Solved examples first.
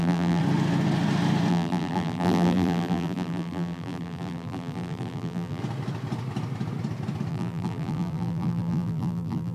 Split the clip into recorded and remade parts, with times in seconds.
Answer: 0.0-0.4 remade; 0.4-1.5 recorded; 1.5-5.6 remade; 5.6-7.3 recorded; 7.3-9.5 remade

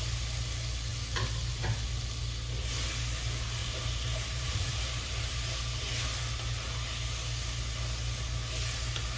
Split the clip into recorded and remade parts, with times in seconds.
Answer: 0.0-3.6 recorded; 3.6-5.2 remade; 5.2-9.2 recorded

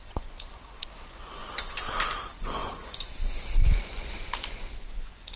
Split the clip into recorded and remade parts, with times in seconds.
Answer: 0.0-5.4 remade

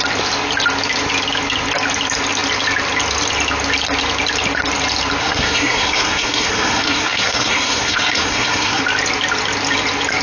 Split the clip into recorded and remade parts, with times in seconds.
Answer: 0.0-5.2 recorded; 5.2-8.8 remade; 8.8-10.2 recorded

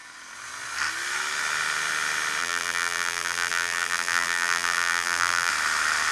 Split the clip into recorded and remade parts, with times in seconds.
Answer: 0.0-2.4 recorded; 2.4-5.5 remade; 5.5-6.1 recorded

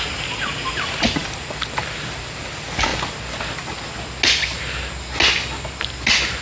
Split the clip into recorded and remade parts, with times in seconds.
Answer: 0.0-1.2 recorded; 1.2-2.4 remade; 2.4-2.9 recorded; 2.9-3.9 remade; 3.9-6.4 recorded